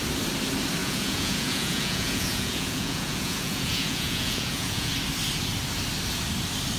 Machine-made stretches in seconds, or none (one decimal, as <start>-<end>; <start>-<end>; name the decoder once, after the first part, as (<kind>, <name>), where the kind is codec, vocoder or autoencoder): 0.8-4.9 (vocoder, Vocos)

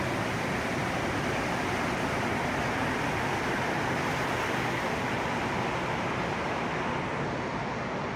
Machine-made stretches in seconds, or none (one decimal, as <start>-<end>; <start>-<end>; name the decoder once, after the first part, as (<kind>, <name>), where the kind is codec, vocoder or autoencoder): none

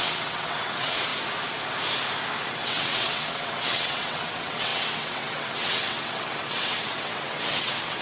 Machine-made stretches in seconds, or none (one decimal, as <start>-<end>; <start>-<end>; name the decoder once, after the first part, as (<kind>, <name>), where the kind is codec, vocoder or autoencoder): 0.0-1.1 (vocoder, WaveNeXt); 2.5-8.0

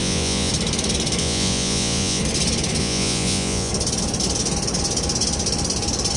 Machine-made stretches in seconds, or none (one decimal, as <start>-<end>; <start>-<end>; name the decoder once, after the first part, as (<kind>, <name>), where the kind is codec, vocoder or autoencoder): 0.0-0.5 (vocoder, Vocos); 1.2-2.2; 2.8-3.7

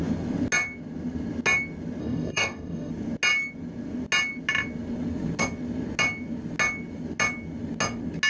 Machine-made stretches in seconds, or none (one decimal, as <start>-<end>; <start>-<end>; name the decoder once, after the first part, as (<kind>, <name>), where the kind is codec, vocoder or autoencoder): 2.0-2.9 (codec, DAC)

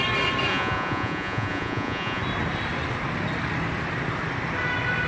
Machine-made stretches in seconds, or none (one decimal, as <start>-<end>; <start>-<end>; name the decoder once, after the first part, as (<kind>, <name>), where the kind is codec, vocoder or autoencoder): 0.5-2.2 (vocoder, Vocos)

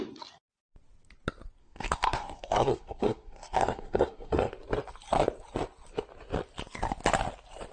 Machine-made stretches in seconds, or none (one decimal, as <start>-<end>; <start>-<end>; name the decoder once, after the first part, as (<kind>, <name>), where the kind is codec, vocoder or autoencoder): 1.6-4.5 (codec, SNAC)

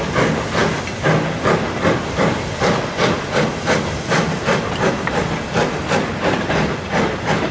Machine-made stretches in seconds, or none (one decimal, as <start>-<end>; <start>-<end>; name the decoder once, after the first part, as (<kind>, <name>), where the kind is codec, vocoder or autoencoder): none